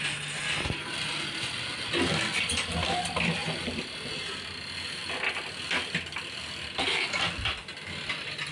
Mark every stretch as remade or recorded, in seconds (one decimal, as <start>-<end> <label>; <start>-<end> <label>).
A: 0.0-8.5 recorded